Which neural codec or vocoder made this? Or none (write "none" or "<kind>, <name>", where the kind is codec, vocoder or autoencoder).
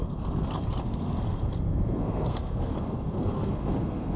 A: codec, SNAC